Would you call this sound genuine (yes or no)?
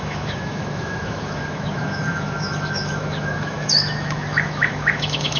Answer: no